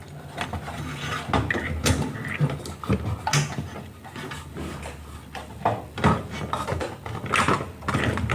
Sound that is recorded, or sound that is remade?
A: recorded